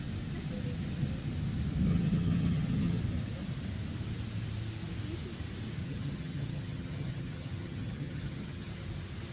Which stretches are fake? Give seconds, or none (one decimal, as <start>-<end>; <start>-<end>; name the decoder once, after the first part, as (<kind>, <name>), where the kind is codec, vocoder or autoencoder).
1.9-3.0 (vocoder, HiFi-GAN); 5.8-8.7